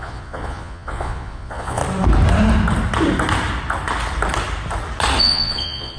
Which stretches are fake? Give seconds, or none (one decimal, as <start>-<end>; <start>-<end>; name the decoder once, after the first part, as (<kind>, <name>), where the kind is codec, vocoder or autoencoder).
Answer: 0.0-1.8 (vocoder, Vocos); 5.2-6.0

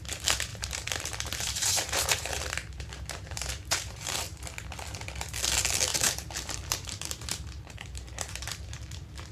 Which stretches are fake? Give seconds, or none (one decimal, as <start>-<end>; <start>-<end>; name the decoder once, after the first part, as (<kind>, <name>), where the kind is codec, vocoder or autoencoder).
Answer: 0.5-4.2 (vocoder, BigVGAN v2); 5.9-8.3

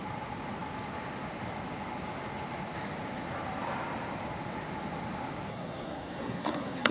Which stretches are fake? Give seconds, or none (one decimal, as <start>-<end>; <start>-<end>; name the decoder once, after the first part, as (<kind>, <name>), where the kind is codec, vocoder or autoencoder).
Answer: 5.5-6.9 (codec, SNAC)

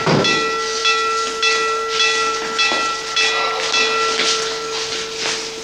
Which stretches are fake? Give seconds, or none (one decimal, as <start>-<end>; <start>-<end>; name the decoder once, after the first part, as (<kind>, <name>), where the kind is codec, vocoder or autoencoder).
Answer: none

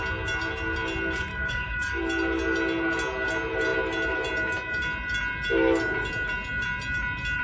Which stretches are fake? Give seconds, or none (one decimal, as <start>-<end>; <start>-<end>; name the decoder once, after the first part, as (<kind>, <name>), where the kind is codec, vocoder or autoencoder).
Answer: 1.3-2.0 (codec, DAC)

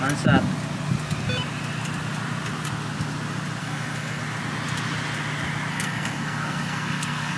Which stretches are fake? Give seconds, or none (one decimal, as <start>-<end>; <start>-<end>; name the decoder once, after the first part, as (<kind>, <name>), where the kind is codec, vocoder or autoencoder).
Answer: 3.6-4.2 (codec, SNAC); 5.7-7.4

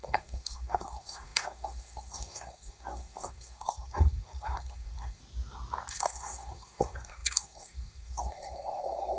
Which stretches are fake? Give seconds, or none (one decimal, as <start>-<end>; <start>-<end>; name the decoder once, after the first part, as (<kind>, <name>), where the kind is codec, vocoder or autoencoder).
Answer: 0.0-5.2 (codec, SNAC); 5.9-9.2

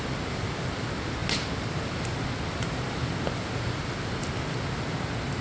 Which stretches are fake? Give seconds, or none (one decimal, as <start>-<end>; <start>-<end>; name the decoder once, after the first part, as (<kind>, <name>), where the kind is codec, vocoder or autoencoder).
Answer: none